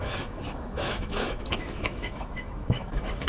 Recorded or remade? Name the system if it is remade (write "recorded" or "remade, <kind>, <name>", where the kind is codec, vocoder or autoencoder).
remade, autoencoder, DAC-VAE